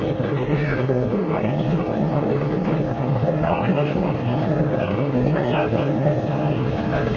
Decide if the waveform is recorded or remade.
remade